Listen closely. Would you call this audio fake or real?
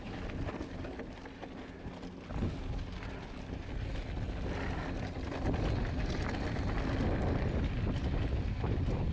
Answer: real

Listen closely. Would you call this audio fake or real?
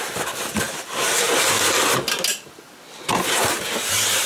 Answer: real